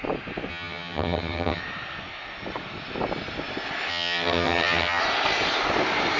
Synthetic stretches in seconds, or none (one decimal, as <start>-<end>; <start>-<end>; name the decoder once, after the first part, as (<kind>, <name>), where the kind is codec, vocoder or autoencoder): 0.5-1.6 (vocoder, HiFi-GAN); 3.9-5.0